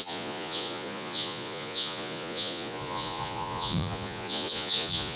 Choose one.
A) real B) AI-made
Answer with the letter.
B